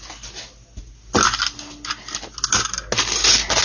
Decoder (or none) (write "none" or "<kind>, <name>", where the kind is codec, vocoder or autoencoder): none